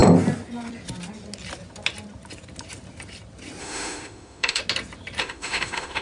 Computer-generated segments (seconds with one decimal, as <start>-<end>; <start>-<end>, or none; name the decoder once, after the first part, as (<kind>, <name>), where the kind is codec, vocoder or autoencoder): 3.6-4.6 (autoencoder, DAC-VAE); 5.2-6.0